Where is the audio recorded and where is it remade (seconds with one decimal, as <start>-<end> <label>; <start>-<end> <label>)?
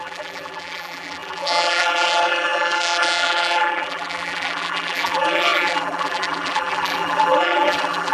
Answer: 0.0-8.1 remade